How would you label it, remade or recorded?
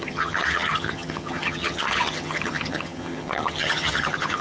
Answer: remade